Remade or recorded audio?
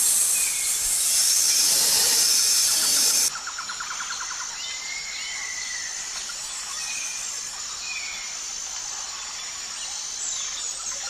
recorded